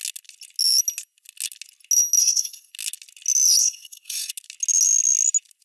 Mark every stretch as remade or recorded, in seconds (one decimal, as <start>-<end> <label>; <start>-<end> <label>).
0.0-2.2 recorded; 2.2-2.7 remade; 2.7-3.6 recorded; 3.6-4.3 remade; 4.3-5.6 recorded